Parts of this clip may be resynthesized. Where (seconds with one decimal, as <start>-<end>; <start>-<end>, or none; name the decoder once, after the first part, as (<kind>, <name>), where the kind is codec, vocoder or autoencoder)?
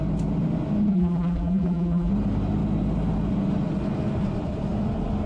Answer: 0.9-2.1 (vocoder, BigVGAN v2)